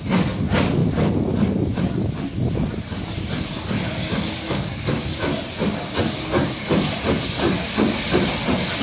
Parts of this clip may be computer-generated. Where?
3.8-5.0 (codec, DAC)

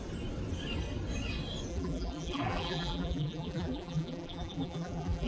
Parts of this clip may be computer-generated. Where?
1.7-5.3 (vocoder, BigVGAN v2)

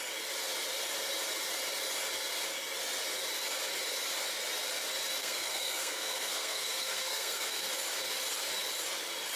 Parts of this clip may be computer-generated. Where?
5.2-7.7 (codec, SNAC)

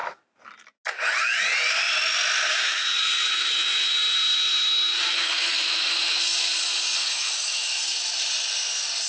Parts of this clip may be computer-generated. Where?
2.4-6.2 (autoencoder, DAC-VAE); 7.0-7.8